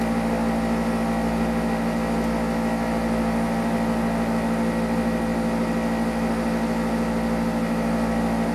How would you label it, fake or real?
real